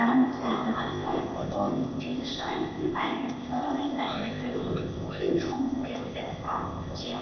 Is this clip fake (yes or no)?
yes